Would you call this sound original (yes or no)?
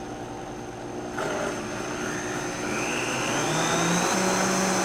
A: yes